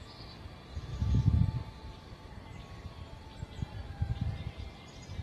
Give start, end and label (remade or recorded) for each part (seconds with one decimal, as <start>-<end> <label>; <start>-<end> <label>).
0.0-0.9 recorded; 0.9-1.4 remade; 1.4-5.2 recorded